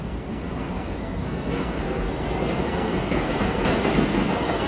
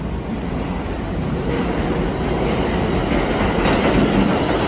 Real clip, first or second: second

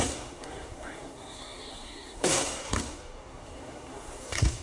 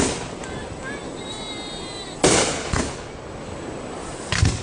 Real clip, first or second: second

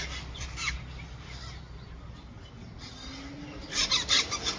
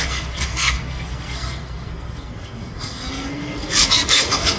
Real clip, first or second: first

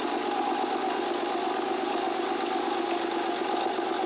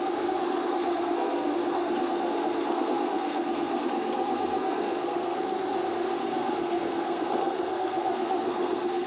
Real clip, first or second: first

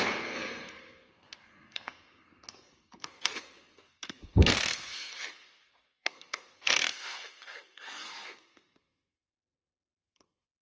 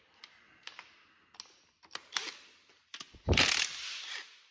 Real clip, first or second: second